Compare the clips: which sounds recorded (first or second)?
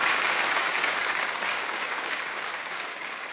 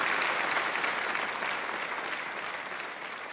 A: second